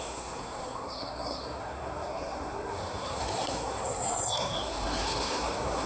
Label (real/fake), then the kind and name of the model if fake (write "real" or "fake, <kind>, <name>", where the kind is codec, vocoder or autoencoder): fake, codec, SNAC